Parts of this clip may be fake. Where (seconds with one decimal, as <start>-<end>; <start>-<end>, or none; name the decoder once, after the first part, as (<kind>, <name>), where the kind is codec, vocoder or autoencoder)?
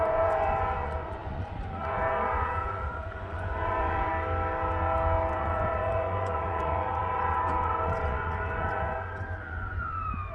0.0-4.1 (vocoder, Vocos); 5.3-10.3